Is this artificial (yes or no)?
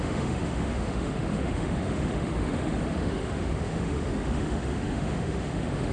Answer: yes